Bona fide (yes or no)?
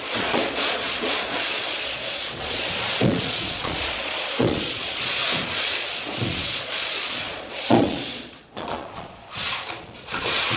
no